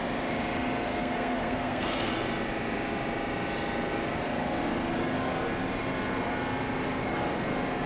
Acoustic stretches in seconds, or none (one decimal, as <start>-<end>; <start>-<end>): 0.0-0.9; 2.1-7.9